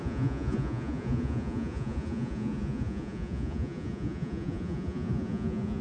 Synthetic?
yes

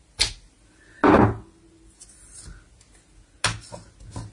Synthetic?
no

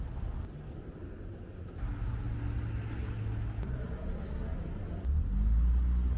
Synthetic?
no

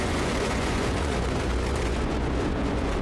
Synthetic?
yes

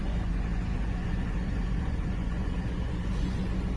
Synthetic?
yes